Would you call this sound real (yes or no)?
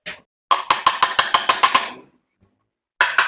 yes